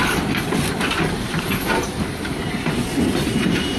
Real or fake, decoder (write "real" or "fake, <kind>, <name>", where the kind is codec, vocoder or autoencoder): real